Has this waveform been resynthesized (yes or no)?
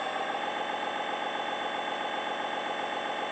no